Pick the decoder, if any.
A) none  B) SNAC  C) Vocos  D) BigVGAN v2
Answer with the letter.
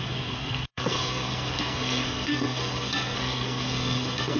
B